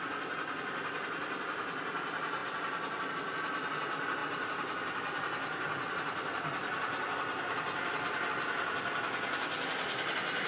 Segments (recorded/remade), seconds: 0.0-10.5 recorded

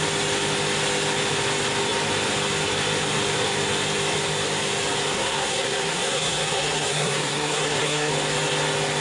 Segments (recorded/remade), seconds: 0.0-5.1 recorded; 5.1-8.1 remade; 8.1-9.0 recorded